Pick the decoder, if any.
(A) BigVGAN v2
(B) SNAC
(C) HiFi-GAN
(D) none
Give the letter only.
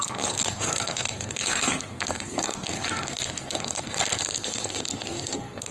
B